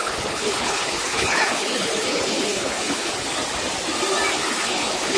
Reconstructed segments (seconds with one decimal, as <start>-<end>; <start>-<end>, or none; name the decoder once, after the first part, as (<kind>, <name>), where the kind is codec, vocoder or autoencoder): 0.0-3.1 (codec, HILCodec); 4.3-5.2